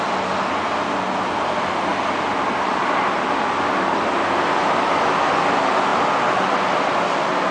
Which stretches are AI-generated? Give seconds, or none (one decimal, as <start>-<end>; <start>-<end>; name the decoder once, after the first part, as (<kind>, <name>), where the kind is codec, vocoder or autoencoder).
none